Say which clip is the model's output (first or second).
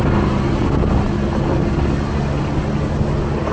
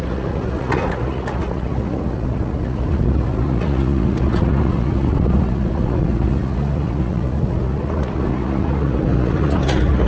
second